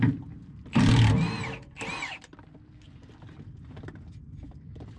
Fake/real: real